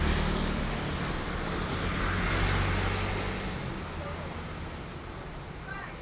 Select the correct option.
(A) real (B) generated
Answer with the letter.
A